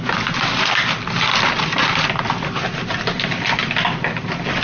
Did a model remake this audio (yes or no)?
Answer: no